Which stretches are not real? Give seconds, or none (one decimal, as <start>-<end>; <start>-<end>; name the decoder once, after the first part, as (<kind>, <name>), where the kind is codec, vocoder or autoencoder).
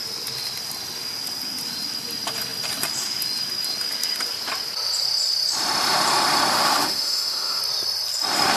6.5-7.6 (autoencoder, DAC-VAE)